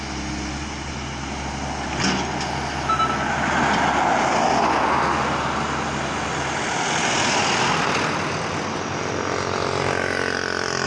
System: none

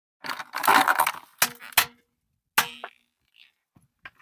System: none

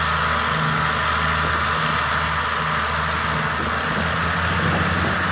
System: none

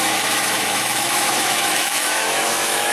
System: autoencoder, DAC-VAE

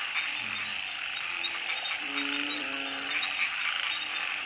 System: none